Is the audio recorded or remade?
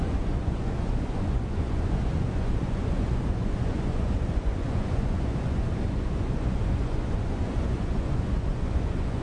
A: remade